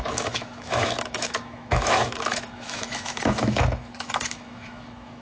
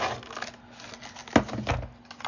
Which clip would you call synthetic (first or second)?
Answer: first